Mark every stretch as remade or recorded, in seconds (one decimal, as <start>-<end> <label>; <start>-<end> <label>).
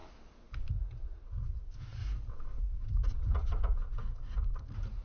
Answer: 0.0-0.7 recorded; 0.7-2.0 remade; 2.0-2.6 recorded; 2.6-5.0 remade